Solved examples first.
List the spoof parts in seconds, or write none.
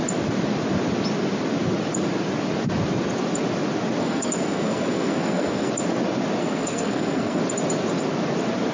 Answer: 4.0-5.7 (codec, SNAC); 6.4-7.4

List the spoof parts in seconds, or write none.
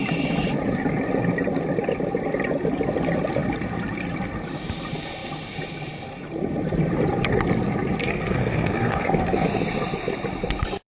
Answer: 8.1-9.7 (codec, SNAC)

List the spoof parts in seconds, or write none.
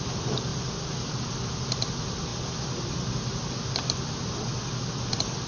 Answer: none